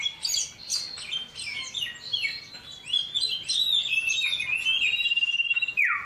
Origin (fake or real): real